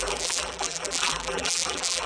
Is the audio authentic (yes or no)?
no